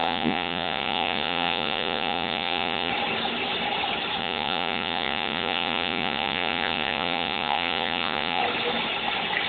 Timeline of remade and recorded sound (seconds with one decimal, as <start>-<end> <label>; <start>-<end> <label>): 0.0-2.9 remade; 2.9-4.2 recorded; 4.2-8.4 remade; 8.4-9.5 recorded